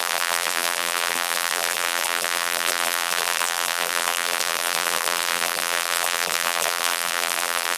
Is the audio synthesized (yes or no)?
yes